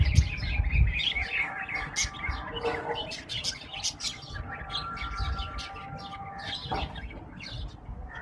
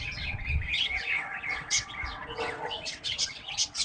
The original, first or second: first